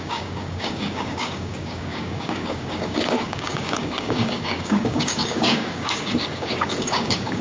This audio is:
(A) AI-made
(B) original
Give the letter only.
A